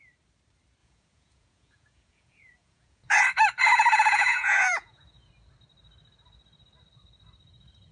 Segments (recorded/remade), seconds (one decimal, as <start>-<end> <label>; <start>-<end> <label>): 0.0-0.8 recorded; 0.8-3.2 remade; 3.2-3.7 recorded; 3.7-5.3 remade; 5.3-7.9 recorded